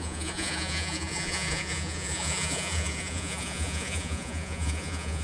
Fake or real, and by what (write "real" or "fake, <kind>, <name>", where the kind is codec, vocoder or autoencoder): fake, vocoder, Vocos